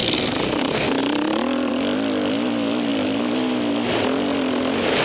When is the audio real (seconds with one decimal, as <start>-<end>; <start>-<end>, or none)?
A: 0.0-5.0